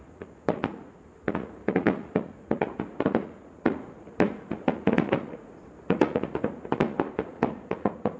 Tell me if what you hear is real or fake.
fake